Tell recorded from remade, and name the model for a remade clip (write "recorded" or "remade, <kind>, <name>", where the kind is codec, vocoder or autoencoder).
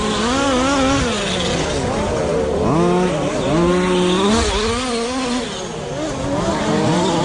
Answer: recorded